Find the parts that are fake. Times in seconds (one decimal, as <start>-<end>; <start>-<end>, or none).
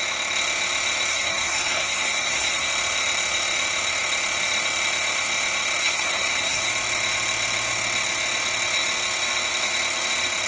1.1-2.7; 5.8-6.7